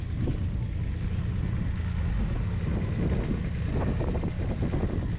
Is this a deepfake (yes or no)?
no